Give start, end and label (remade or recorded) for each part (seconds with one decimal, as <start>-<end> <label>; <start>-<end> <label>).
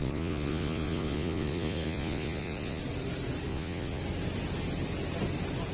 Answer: 0.0-2.8 remade; 2.8-3.5 recorded; 3.5-4.0 remade; 4.0-5.7 recorded